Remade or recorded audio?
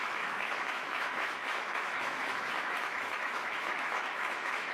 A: remade